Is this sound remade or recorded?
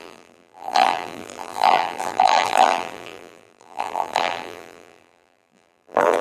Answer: remade